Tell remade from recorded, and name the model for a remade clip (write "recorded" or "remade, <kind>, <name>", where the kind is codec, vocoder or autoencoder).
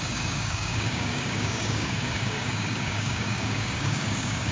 remade, codec, DAC